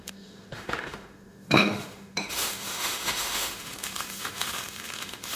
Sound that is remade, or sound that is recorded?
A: remade